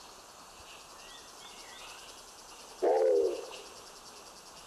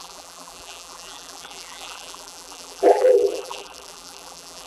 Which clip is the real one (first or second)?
first